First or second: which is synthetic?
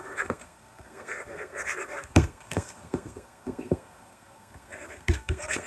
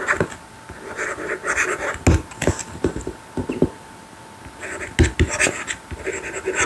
first